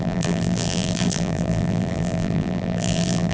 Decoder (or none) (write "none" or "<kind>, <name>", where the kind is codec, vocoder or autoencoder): vocoder, BigVGAN v2